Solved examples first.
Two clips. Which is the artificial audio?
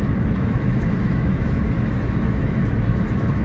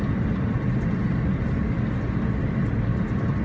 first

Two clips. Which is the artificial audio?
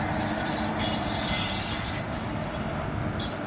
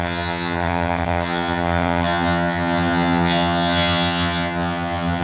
second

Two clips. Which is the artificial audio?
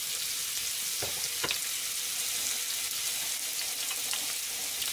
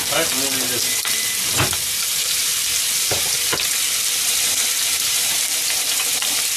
second